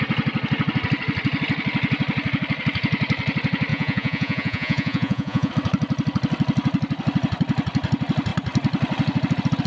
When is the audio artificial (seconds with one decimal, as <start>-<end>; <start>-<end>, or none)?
3.7-5.5